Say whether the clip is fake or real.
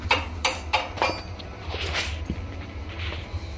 real